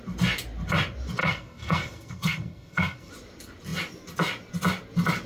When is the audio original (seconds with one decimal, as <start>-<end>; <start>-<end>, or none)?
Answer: 0.0-1.2; 3.1-5.3